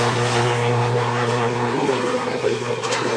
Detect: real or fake fake